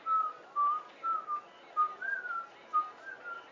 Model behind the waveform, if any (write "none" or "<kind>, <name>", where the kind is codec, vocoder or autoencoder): none